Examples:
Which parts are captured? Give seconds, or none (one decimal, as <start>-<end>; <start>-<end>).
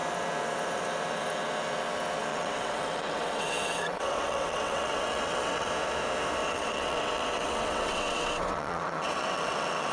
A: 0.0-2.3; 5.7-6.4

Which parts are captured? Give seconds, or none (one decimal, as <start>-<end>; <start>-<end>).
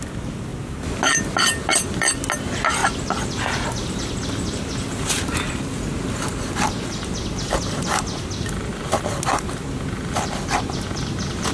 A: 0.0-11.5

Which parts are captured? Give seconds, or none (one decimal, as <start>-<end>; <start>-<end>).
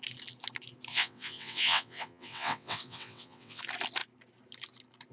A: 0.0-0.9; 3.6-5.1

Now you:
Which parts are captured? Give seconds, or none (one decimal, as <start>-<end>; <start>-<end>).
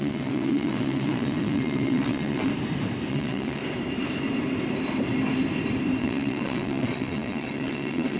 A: 2.5-3.1; 3.6-6.0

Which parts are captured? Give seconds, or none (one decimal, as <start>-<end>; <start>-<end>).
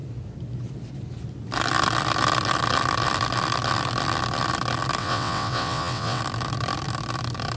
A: 0.0-5.0; 6.2-7.6